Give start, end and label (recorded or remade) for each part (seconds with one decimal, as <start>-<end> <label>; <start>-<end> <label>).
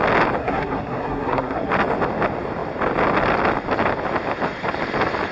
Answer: 0.0-0.4 recorded; 0.4-1.7 remade; 1.7-5.3 recorded